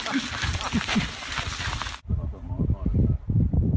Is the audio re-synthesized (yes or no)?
no